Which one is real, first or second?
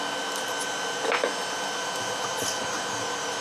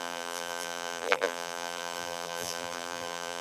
first